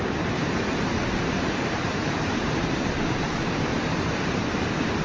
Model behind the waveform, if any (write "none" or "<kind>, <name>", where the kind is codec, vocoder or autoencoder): vocoder, BigVGAN v2